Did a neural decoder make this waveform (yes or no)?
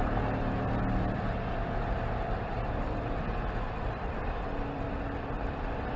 yes